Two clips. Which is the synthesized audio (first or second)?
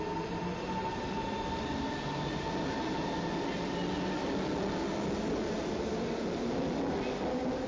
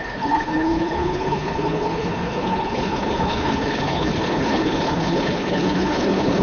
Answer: second